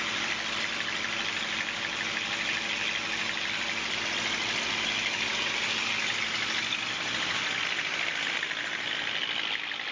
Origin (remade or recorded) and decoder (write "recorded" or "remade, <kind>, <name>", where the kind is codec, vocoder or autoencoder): recorded